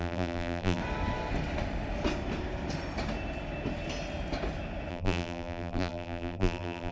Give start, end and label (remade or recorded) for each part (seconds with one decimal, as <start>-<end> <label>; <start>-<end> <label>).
0.0-0.8 remade; 0.8-4.9 recorded; 4.9-6.9 remade